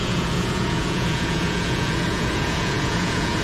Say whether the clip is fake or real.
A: fake